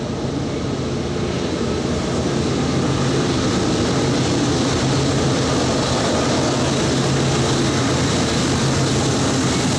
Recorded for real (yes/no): yes